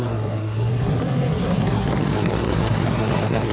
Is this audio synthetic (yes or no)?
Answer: yes